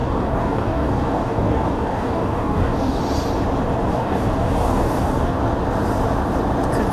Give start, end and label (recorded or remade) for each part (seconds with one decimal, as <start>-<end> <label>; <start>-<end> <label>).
0.0-3.0 remade; 3.0-3.9 recorded; 3.9-5.4 remade; 5.4-6.9 recorded